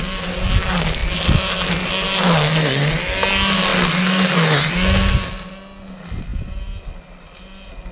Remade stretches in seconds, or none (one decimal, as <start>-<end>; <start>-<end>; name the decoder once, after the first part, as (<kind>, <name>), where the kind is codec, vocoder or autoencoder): none